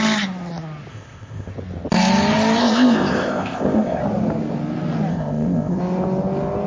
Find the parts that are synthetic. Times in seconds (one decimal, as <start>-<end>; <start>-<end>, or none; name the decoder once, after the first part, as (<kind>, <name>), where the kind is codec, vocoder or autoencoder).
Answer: 0.9-1.5 (codec, ZipCodec); 2.6-4.0; 5.1-5.8